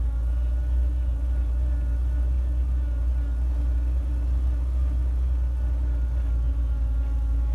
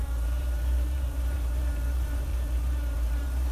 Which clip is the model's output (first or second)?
second